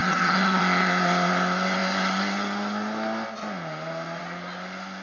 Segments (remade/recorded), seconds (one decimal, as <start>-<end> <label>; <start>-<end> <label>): 0.0-0.6 remade; 0.6-5.0 recorded